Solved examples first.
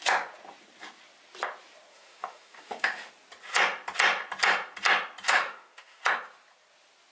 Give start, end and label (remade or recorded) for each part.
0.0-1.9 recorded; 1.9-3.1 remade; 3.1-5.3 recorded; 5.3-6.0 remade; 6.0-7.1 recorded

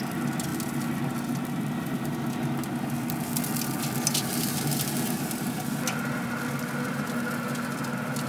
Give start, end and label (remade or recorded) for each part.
0.0-8.3 recorded

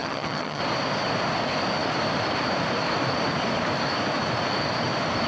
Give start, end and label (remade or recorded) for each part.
0.0-0.6 remade; 0.6-5.3 recorded

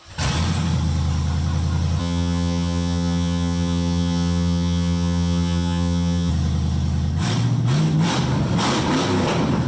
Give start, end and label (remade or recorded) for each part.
0.0-2.0 recorded; 2.0-6.3 remade; 6.3-9.7 recorded

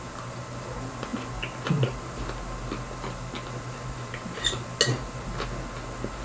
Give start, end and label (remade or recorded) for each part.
0.0-6.2 recorded

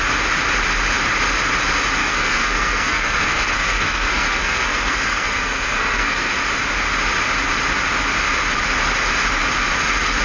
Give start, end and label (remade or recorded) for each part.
0.0-2.0 recorded; 2.0-6.3 remade; 6.3-10.2 recorded